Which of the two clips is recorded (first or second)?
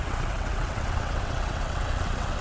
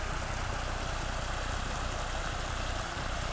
second